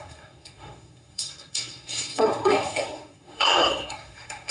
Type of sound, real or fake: fake